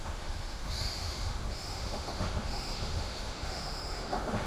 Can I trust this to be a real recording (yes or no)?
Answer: no